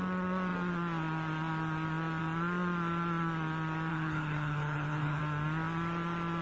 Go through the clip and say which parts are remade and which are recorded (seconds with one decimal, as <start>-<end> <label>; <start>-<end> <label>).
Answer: 0.0-3.9 recorded; 3.9-5.2 remade; 5.2-6.4 recorded